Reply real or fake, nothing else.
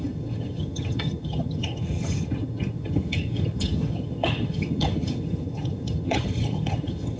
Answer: fake